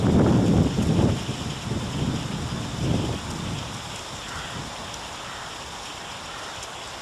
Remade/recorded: recorded